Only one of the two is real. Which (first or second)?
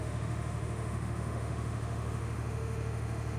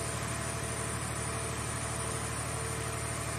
second